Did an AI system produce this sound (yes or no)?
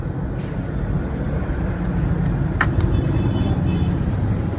yes